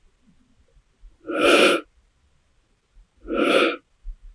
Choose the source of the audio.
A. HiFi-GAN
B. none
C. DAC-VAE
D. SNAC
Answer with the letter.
B